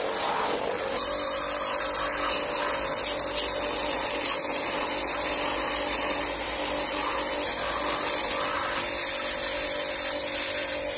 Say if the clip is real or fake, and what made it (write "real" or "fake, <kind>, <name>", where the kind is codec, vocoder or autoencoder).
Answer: real